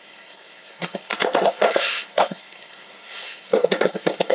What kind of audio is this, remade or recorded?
remade